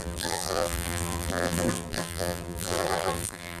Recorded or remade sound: remade